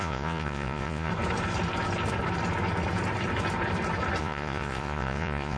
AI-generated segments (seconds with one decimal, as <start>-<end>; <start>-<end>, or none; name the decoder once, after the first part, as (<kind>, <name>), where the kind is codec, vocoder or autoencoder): 0.0-1.1 (vocoder, Vocos); 4.2-5.6

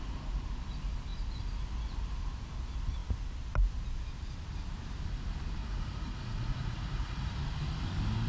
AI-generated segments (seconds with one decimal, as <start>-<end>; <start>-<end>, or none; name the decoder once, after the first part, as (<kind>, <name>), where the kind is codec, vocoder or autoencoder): 5.6-7.3 (vocoder, Vocos)